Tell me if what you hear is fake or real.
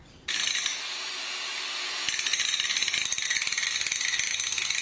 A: real